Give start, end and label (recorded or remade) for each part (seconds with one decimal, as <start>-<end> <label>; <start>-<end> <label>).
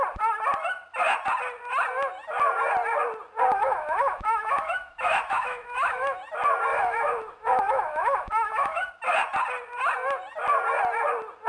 0.0-3.5 recorded; 3.5-6.2 remade; 6.2-6.7 recorded; 6.7-8.9 remade; 8.9-11.5 recorded